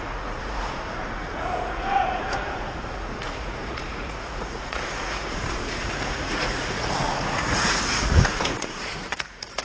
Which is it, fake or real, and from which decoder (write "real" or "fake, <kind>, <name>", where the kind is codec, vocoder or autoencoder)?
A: fake, vocoder, Vocos